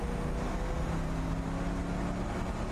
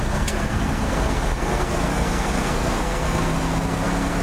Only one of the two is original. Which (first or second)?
first